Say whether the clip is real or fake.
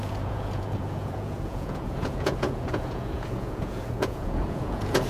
fake